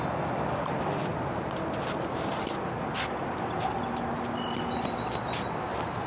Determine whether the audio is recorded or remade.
recorded